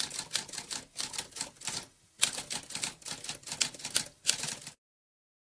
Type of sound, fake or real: real